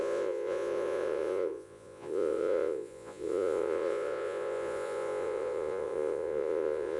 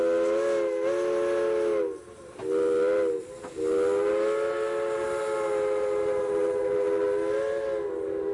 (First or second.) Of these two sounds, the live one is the second